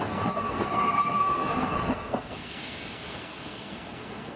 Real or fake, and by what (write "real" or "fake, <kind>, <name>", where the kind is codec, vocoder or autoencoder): fake, codec, SNAC